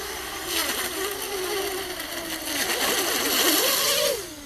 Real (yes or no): yes